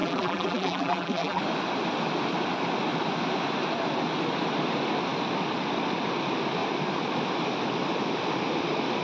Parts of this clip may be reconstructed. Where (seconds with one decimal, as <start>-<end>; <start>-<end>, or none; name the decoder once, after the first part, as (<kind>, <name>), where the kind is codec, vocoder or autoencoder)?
0.0-1.4 (vocoder, BigVGAN v2)